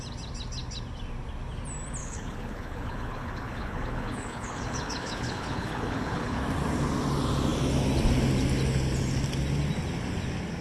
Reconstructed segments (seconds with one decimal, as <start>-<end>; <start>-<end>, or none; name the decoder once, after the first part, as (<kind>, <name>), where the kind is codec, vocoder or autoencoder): 2.0-6.4 (codec, HILCodec)